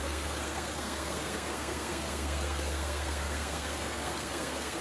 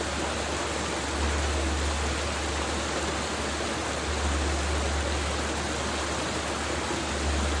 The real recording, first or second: second